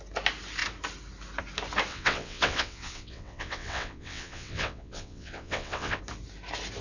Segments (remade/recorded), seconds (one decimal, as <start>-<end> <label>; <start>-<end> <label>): 0.0-1.9 recorded; 1.9-6.0 remade; 6.0-6.8 recorded